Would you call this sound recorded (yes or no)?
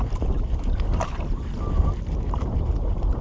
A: yes